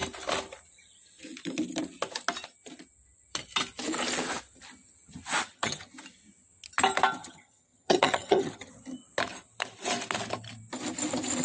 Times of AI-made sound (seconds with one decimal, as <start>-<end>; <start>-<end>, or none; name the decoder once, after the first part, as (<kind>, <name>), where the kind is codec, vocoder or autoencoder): 5.4-5.9 (vocoder, HiFi-GAN); 7.2-8.7